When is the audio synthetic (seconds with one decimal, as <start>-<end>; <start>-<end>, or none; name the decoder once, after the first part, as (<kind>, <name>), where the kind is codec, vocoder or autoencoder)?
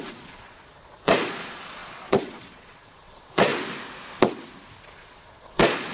0.0-3.5 (vocoder, Vocos); 4.9-5.9